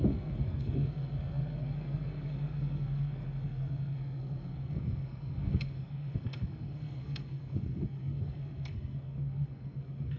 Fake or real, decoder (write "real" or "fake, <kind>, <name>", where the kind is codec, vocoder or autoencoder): fake, codec, SNAC